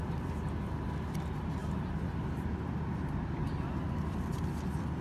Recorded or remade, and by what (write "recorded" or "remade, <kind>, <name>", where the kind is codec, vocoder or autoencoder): recorded